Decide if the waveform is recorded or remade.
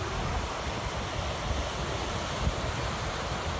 recorded